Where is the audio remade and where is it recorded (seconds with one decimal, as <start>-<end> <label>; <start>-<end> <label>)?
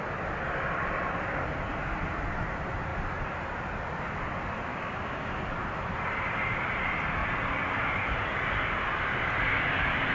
0.0-4.7 recorded; 4.7-5.3 remade; 5.3-10.1 recorded